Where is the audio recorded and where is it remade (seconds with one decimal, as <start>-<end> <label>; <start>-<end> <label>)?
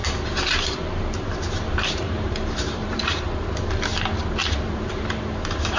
0.0-3.9 remade; 3.9-4.4 recorded; 4.4-5.8 remade